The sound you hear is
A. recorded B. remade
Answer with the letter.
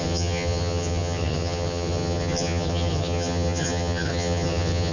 B